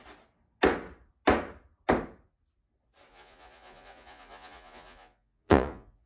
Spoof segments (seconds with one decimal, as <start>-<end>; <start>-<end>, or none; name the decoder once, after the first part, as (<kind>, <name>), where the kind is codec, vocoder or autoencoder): 3.1-6.1 (vocoder, Vocos)